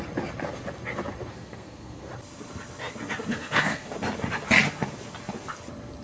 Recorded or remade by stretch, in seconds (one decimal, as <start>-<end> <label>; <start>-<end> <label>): 0.0-1.3 recorded; 1.3-2.1 remade; 2.1-3.3 recorded; 3.3-3.9 remade; 3.9-6.0 recorded